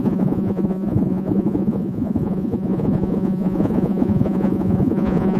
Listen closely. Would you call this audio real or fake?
fake